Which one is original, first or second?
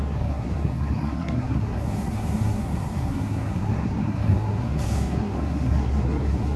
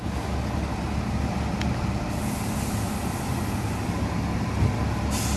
second